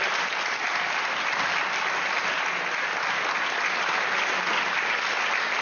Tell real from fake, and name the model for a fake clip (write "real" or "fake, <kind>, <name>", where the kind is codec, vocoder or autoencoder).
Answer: real